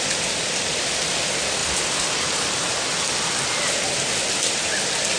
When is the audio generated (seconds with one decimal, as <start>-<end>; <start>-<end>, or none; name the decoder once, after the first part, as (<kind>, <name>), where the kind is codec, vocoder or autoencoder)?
none